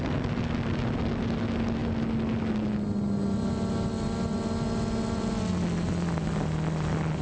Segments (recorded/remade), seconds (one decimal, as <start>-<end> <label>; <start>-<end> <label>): 0.0-7.2 recorded